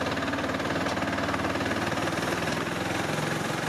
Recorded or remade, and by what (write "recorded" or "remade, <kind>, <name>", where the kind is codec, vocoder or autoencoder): recorded